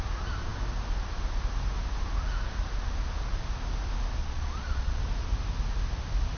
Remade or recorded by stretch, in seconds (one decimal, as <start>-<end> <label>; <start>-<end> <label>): 0.0-4.2 recorded; 4.2-5.0 remade; 5.0-6.4 recorded